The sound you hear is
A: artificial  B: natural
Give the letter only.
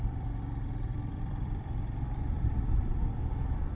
A